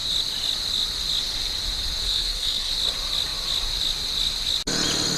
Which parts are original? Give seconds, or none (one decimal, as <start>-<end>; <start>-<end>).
0.0-2.0; 2.7-5.2